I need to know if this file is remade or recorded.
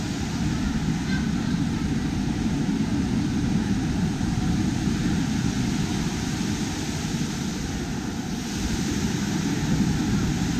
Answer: remade